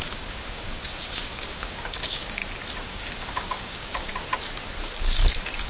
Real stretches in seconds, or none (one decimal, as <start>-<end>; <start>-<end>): 2.4-2.9; 4.1-4.8; 5.2-5.7